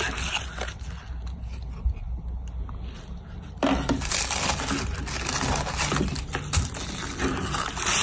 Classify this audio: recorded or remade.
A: recorded